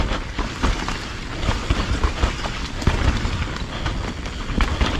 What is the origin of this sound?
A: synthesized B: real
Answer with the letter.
B